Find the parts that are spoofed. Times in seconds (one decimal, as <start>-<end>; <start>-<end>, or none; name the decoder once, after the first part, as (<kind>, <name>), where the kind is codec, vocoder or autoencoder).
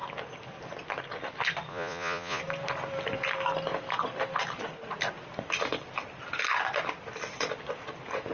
1.7-2.4 (vocoder, Vocos)